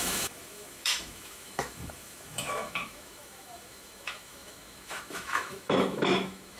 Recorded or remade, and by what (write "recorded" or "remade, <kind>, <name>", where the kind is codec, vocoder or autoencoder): remade, autoencoder, DAC-VAE